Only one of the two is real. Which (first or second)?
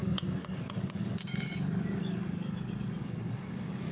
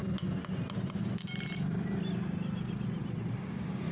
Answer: second